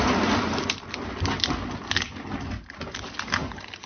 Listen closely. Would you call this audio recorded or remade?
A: recorded